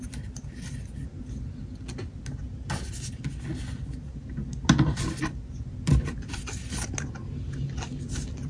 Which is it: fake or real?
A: real